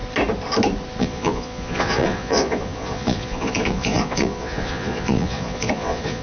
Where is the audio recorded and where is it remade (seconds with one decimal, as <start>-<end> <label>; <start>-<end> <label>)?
0.0-1.0 recorded; 1.0-6.2 remade